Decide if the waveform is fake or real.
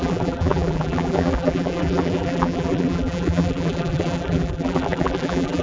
fake